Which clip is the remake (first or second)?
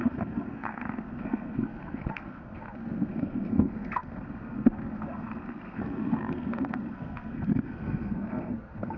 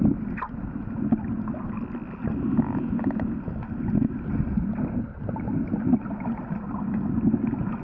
first